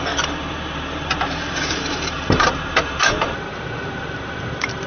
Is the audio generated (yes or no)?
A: yes